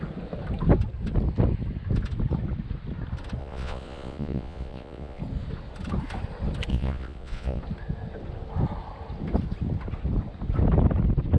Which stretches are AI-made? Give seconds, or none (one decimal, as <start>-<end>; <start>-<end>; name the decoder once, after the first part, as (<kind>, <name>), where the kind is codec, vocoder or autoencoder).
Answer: 3.4-5.2 (vocoder, Vocos); 6.7-7.6